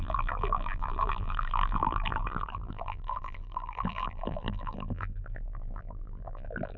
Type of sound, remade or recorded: remade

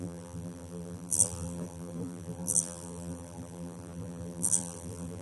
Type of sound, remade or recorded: remade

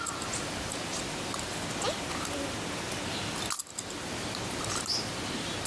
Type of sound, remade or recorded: recorded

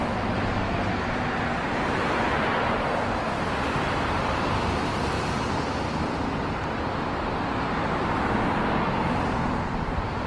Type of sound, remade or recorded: recorded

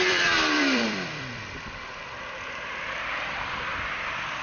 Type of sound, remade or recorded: remade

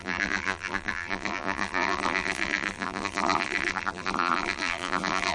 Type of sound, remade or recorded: remade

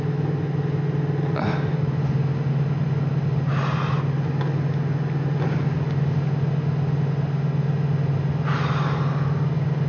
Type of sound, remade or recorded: recorded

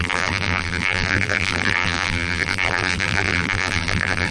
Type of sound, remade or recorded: remade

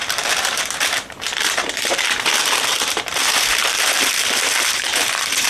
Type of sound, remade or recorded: remade